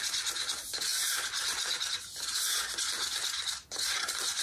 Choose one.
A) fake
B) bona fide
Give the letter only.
B